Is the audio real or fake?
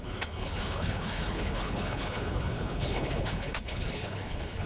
fake